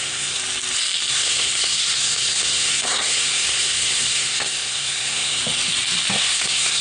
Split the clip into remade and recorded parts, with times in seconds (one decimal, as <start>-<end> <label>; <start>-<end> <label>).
0.0-0.4 remade; 0.4-1.1 recorded; 1.1-5.4 remade; 5.4-6.1 recorded; 6.1-6.8 remade